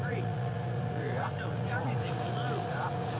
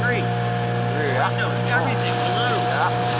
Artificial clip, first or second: first